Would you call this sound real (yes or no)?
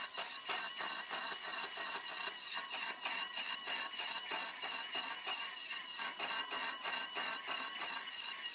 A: yes